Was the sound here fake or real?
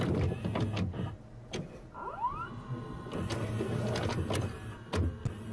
real